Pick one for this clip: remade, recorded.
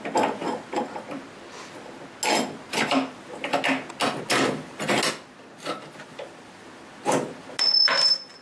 recorded